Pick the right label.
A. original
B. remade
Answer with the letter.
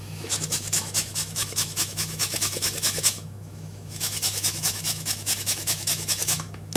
B